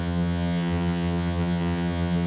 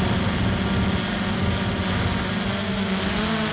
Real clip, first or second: second